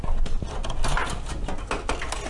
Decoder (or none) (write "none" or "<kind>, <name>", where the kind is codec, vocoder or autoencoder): none